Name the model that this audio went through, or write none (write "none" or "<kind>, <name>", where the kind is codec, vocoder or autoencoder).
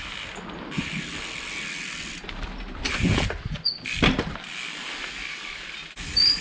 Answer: none